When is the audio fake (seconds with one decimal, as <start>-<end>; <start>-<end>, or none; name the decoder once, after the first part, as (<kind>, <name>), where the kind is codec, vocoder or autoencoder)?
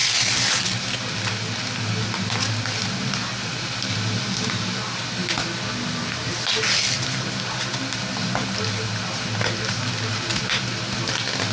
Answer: none